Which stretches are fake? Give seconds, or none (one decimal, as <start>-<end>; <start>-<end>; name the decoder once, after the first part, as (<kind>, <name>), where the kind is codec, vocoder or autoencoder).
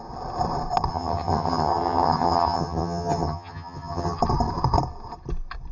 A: 0.9-4.2 (vocoder, HiFi-GAN)